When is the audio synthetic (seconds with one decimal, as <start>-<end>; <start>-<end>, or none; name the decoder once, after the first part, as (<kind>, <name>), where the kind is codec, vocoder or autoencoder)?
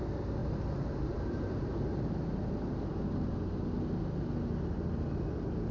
0.4-3.5 (vocoder, BigVGAN v2)